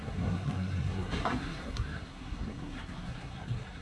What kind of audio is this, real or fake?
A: fake